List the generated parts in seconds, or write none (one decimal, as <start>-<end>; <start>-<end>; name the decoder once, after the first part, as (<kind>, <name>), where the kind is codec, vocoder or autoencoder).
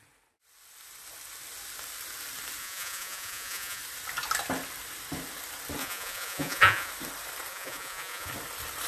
2.6-3.8 (vocoder, Vocos); 5.8-6.9; 7.5-8.3